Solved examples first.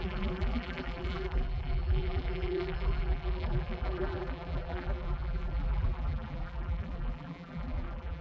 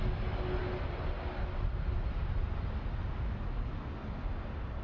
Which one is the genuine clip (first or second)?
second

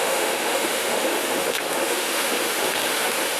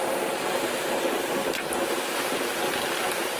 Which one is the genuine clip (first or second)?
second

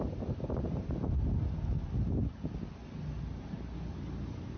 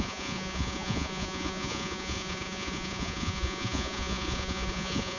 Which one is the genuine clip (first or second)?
first